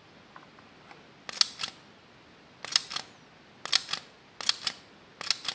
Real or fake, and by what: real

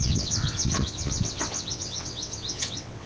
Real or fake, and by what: fake, vocoder, WaveNeXt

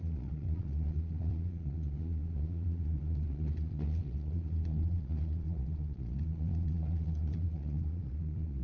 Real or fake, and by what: fake, vocoder, Vocos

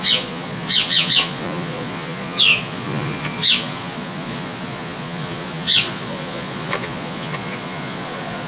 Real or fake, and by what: fake, vocoder, Vocos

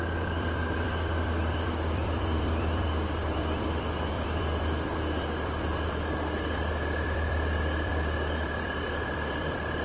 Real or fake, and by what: fake, vocoder, BigVGAN v2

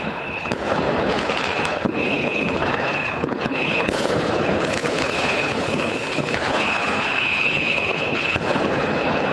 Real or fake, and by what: fake, codec, HILCodec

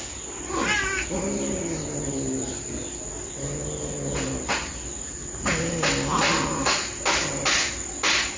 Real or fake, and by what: real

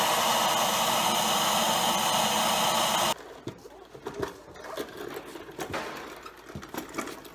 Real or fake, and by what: real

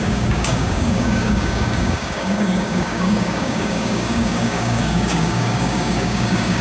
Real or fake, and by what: fake, codec, DAC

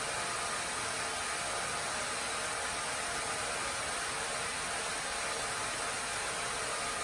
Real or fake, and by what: real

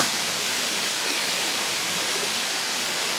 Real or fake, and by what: fake, codec, DAC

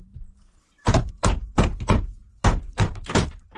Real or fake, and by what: fake, vocoder, BigVGAN v2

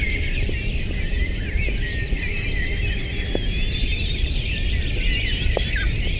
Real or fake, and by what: real